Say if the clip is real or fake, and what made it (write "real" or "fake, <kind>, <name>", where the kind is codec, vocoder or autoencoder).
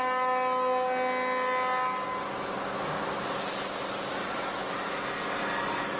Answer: real